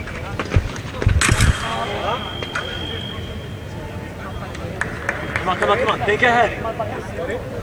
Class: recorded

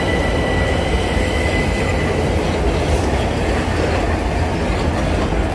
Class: recorded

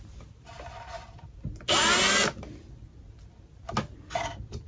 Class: recorded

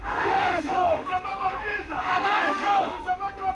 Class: remade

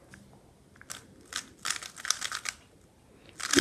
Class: recorded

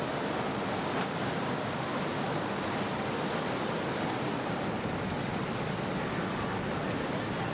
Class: recorded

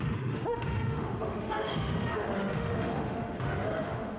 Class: remade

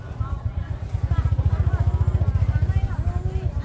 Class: recorded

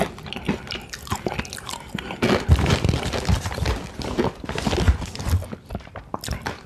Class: recorded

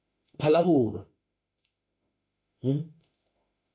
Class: remade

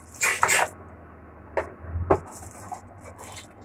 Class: recorded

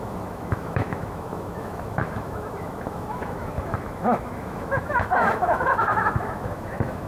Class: remade